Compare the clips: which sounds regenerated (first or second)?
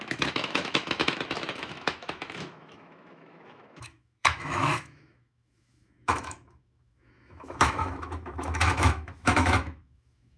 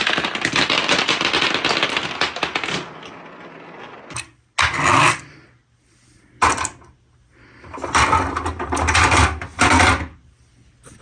first